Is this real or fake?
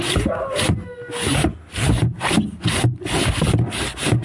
real